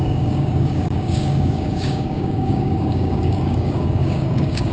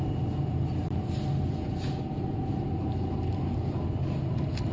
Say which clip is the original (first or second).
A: second